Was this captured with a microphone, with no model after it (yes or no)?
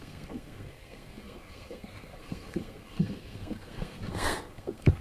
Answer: no